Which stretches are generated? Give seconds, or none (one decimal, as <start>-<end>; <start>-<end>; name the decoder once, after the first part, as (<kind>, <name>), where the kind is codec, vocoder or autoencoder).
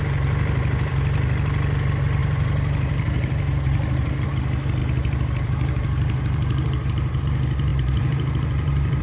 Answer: 2.2-4.3 (vocoder, BigVGAN v2); 4.8-7.2; 7.7-9.0